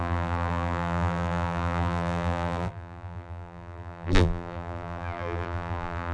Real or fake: fake